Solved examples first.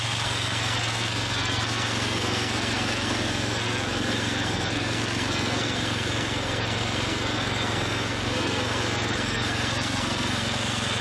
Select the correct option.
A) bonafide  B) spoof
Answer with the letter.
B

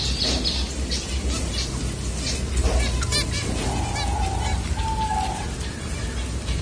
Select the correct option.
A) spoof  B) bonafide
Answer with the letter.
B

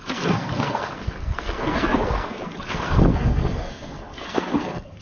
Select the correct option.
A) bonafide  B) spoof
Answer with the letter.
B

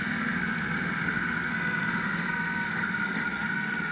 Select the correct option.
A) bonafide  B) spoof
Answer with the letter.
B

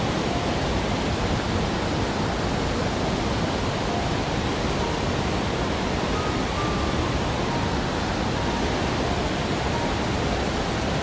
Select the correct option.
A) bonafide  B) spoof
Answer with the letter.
A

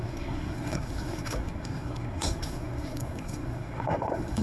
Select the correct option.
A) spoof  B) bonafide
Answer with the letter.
A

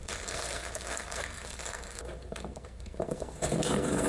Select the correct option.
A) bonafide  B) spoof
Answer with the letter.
B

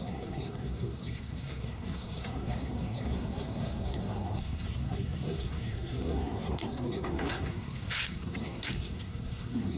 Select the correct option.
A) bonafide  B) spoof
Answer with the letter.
B